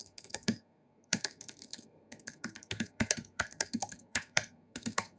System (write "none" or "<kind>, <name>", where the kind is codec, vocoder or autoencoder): codec, SNAC